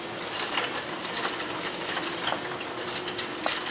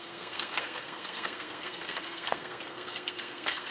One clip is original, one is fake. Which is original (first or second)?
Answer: first